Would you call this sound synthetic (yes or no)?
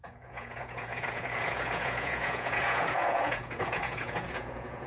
yes